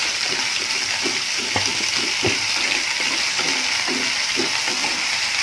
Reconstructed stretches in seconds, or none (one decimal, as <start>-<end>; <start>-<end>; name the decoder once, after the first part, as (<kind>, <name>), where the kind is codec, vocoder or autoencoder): 0.0-5.4 (vocoder, BigVGAN v2)